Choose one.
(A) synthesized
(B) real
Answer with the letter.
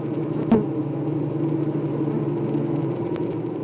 B